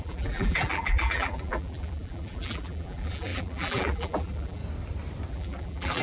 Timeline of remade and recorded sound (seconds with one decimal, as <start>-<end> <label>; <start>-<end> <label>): 0.0-4.6 remade; 4.6-5.3 recorded; 5.3-6.0 remade